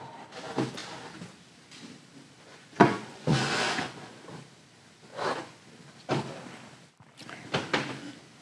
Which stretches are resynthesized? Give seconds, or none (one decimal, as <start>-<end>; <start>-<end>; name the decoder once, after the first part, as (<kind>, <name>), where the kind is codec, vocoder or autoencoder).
2.5-4.2 (vocoder, Vocos); 5.1-5.7